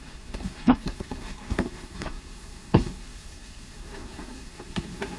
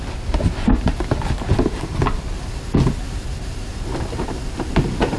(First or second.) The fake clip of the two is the first